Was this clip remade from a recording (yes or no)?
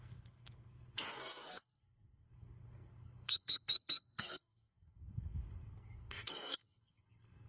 yes